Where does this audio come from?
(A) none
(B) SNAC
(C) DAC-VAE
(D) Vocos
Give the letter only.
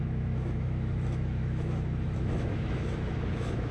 C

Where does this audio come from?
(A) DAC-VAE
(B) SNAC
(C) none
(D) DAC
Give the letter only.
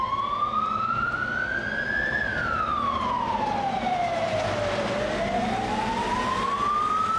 C